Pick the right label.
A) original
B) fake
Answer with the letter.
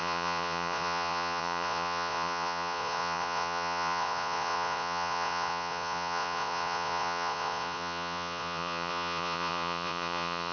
B